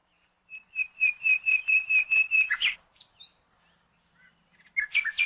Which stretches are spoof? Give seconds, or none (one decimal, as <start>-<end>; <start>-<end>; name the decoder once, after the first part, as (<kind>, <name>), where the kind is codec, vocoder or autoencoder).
0.0-3.2 (vocoder, BigVGAN v2)